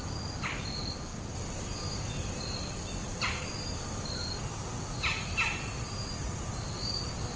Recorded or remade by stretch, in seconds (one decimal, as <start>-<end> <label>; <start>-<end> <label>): 0.0-7.4 recorded